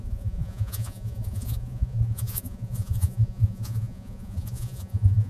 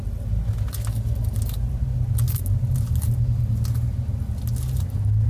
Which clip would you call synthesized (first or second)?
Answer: first